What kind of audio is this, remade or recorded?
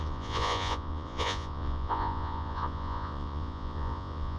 remade